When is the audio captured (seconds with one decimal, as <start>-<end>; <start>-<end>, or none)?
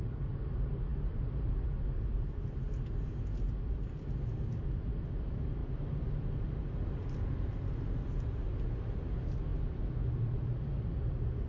0.0-0.9; 1.5-11.5